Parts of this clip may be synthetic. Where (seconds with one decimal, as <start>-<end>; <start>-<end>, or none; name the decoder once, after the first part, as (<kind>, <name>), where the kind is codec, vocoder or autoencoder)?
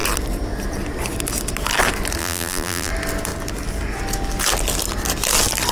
2.2-2.9 (vocoder, BigVGAN v2)